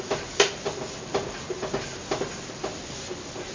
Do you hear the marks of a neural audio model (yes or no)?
no